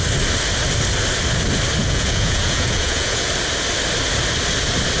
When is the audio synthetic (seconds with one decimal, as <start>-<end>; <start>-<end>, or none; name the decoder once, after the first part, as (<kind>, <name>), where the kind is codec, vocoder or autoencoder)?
1.8-3.3 (vocoder, Vocos)